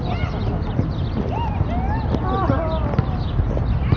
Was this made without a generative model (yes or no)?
yes